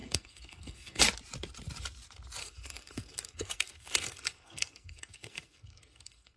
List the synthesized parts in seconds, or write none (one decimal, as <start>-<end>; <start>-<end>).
0.0-1.0; 2.4-6.4